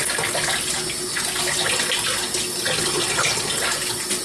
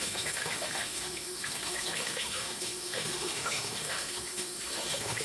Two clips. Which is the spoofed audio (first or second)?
second